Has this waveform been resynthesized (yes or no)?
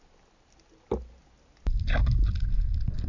no